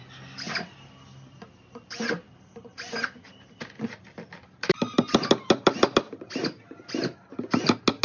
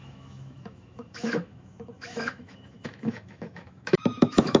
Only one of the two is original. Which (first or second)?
first